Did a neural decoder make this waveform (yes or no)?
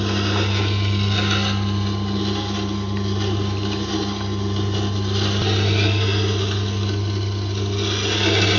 no